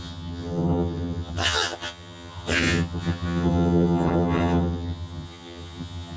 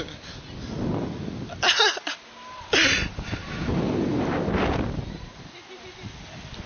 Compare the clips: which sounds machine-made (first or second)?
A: first